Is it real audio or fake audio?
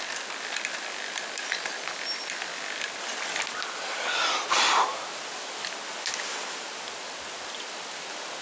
real